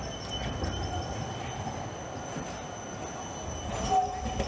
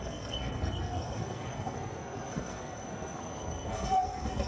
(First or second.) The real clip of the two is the first